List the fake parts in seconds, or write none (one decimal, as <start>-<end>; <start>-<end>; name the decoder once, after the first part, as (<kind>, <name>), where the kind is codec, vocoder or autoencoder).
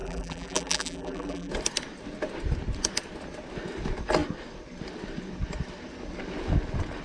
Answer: 0.0-1.5 (vocoder, BigVGAN v2)